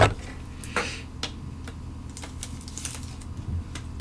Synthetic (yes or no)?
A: no